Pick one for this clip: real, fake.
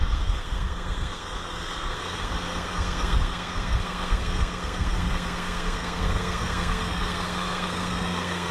fake